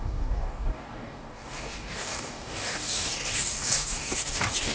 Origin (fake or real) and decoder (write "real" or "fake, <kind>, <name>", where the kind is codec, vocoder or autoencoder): fake, codec, DAC